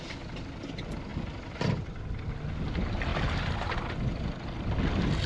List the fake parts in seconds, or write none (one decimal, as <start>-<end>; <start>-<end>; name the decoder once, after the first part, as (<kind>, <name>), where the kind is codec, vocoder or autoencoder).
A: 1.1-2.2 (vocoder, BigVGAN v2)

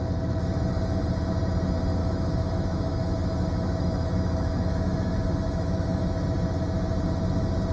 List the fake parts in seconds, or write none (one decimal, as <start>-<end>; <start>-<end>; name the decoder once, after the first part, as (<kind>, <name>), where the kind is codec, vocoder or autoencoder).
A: 2.0-6.0 (autoencoder, DAC-VAE)

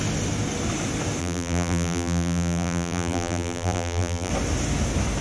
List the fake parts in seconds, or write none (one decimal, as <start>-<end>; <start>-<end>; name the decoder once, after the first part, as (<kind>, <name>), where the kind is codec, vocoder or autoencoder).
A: 1.2-4.3 (vocoder, BigVGAN v2)

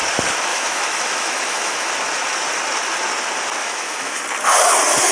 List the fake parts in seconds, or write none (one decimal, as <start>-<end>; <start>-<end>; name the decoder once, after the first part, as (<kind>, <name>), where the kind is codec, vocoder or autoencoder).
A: 0.5-1.9 (autoencoder, DAC-VAE); 3.6-4.2